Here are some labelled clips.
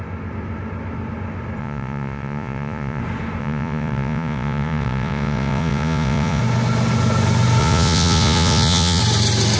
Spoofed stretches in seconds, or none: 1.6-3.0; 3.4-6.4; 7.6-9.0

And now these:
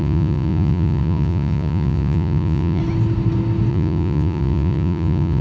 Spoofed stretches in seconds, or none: 0.0-2.8; 3.7-5.4

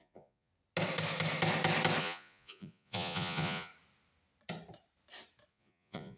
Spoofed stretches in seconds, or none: 0.0-0.5; 2.0-3.7; 5.5-6.2

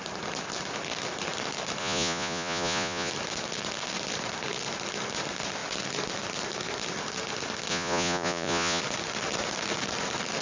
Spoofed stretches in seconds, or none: 1.8-3.1; 7.7-8.8

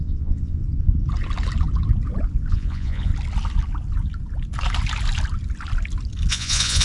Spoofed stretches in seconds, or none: 0.0-0.6; 2.5-3.1; 6.3-6.8

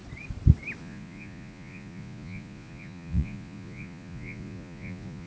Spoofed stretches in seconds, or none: 0.8-5.3